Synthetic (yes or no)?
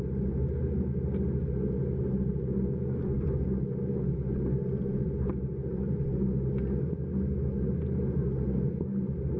no